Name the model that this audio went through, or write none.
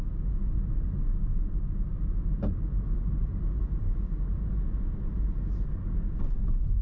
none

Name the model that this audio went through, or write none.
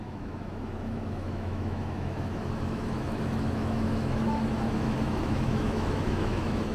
autoencoder, DAC-VAE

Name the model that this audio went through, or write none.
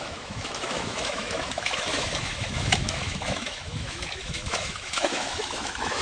autoencoder, DAC-VAE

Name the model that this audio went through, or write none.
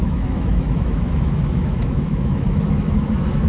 autoencoder, DAC-VAE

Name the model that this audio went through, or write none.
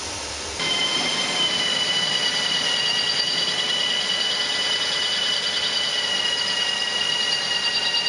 none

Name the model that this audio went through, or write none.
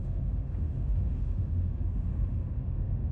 autoencoder, DAC-VAE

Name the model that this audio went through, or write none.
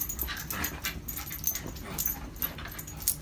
none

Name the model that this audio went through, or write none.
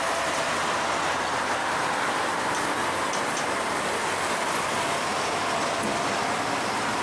none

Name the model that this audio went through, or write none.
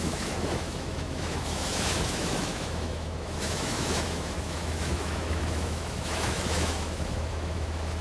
autoencoder, DAC-VAE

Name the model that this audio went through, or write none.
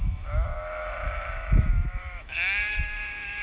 autoencoder, DAC-VAE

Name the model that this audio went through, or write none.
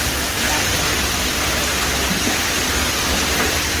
none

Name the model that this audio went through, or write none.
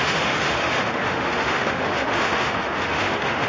autoencoder, DAC-VAE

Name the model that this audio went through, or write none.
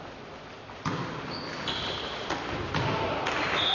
none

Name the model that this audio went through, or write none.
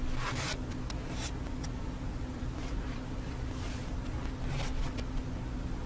none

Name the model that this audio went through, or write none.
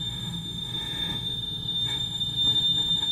autoencoder, DAC-VAE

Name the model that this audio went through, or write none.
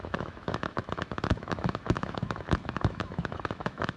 autoencoder, DAC-VAE